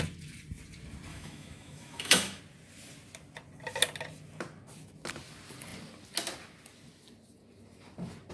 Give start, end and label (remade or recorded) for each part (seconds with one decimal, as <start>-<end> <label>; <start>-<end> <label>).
0.0-1.1 recorded; 1.1-2.4 remade; 2.4-8.3 recorded